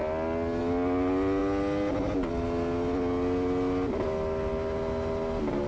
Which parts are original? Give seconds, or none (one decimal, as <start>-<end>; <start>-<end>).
0.0-5.7